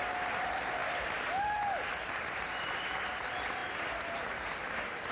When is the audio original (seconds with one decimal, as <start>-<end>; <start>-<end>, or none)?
0.0-5.1